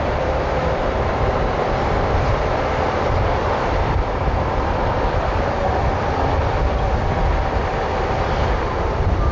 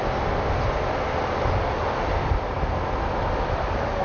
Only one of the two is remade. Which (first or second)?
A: first